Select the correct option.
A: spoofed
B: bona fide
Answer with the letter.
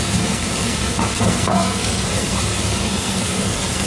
A